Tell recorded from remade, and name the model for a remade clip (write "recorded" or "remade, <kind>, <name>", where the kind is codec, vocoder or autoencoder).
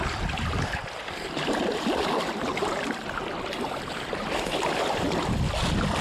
recorded